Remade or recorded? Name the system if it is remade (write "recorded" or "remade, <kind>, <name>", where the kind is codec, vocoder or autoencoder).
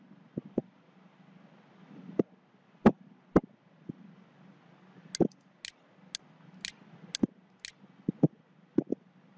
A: recorded